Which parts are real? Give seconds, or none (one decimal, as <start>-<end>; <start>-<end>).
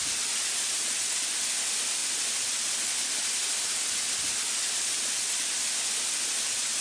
0.0-6.8